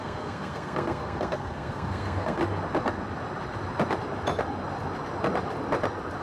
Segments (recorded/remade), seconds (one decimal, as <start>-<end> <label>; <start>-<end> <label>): 0.0-2.4 remade; 2.4-6.2 recorded